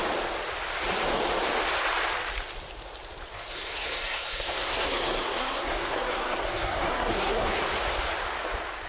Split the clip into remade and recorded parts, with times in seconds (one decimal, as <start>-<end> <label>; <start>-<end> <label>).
0.0-3.3 recorded; 3.3-7.6 remade; 7.6-8.9 recorded